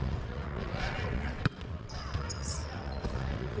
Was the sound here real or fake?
fake